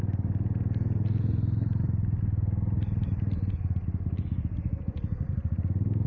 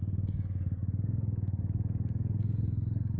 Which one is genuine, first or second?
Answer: first